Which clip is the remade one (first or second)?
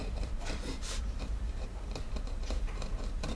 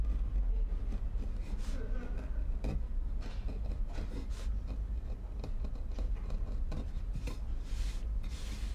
first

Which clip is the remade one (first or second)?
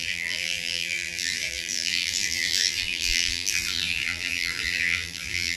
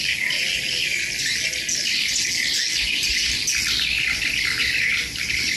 first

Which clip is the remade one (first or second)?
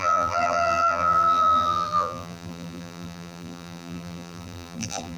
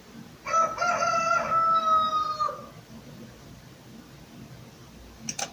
first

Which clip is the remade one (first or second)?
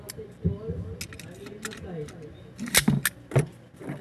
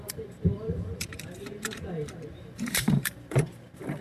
second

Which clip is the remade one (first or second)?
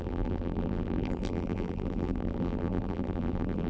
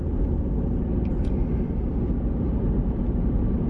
first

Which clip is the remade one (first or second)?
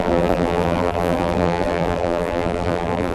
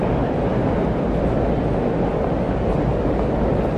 first